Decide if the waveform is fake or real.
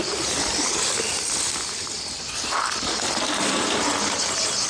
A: real